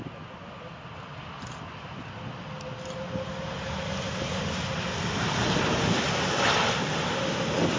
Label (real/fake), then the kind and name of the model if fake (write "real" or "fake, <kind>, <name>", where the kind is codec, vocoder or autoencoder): real